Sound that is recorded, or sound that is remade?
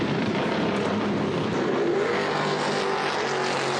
recorded